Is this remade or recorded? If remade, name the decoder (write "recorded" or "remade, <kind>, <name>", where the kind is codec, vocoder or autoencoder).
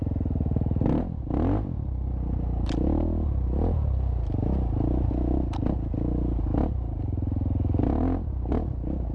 recorded